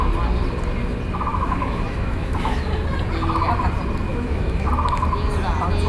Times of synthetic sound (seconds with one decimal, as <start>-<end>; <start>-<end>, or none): 1.3-2.6; 4.1-4.7